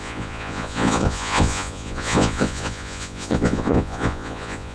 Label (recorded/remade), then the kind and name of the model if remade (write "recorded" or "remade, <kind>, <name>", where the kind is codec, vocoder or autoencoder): remade, vocoder, Vocos